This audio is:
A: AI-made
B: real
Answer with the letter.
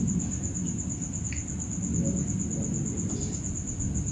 B